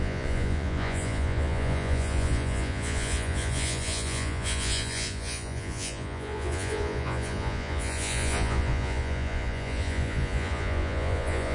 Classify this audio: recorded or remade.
remade